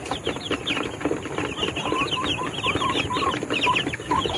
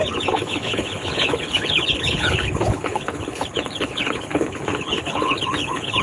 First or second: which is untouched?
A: first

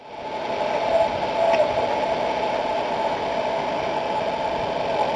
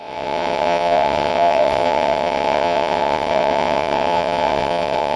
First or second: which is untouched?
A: first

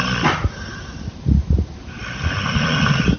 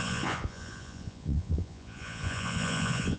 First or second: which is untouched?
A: first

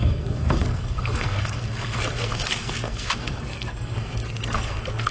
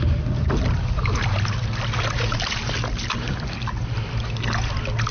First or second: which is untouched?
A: second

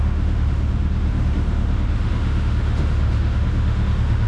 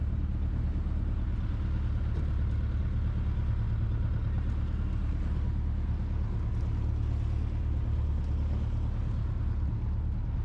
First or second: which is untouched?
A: second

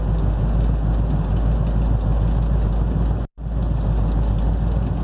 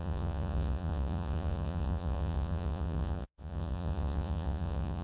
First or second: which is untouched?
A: first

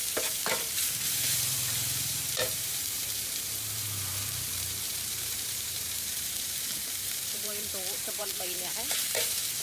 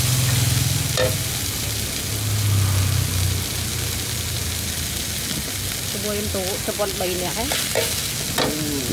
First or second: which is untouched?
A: second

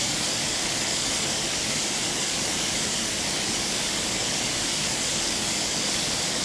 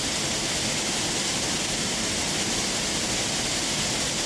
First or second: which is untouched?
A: second